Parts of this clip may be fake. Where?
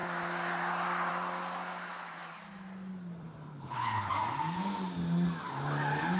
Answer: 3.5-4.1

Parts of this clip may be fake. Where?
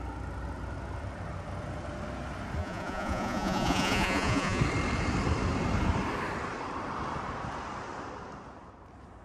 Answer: 2.6-4.6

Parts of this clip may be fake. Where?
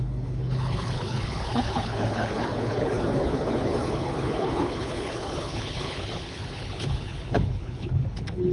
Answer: 0.0-8.5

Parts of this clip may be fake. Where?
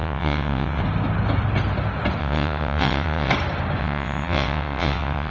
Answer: 0.0-0.8; 2.2-3.3; 3.8-5.3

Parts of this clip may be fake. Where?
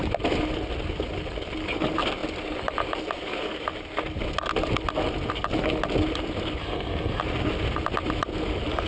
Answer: 6.6-7.2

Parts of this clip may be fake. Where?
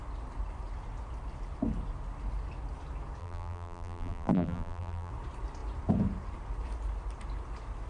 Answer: 3.2-5.1